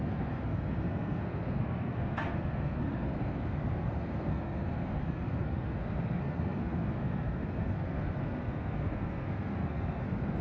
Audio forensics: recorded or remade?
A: remade